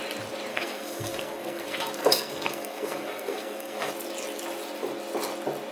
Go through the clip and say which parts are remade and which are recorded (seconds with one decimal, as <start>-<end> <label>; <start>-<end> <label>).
0.0-0.5 recorded; 0.5-3.9 remade; 3.9-5.7 recorded